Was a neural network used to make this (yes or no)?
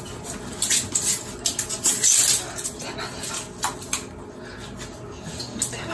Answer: no